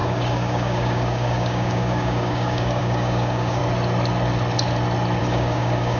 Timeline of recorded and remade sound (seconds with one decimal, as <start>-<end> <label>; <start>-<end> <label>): 0.0-3.6 remade; 3.6-5.2 recorded; 5.2-6.0 remade